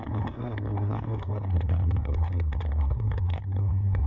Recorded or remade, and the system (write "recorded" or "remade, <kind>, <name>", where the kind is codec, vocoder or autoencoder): remade, codec, SNAC